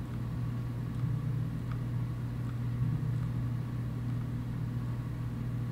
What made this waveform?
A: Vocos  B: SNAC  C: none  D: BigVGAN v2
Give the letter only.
C